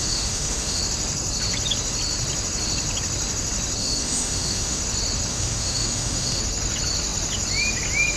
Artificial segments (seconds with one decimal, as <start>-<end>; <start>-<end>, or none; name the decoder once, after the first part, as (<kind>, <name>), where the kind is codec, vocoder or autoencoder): 0.0-0.8 (autoencoder, DAC-VAE); 3.8-4.8; 5.3-6.4